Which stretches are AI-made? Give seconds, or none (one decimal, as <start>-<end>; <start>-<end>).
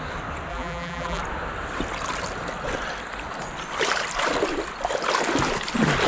0.5-1.2